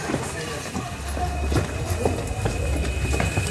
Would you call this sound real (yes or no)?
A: yes